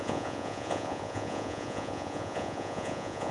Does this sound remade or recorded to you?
remade